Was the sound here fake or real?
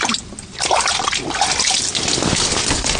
real